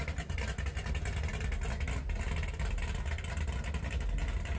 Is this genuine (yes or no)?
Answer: yes